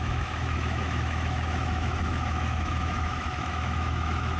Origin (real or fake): fake